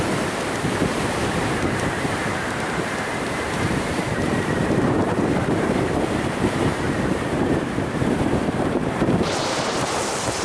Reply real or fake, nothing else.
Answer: fake